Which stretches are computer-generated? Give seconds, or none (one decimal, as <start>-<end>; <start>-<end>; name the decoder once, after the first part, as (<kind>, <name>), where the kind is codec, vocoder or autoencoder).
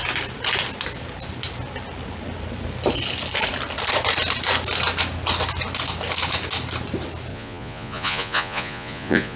7.3-9.4 (vocoder, Vocos)